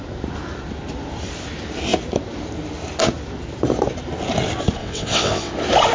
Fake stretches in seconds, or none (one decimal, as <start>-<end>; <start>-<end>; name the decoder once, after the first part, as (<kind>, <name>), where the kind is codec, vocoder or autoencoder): 4.8-5.5 (vocoder, WaveNeXt)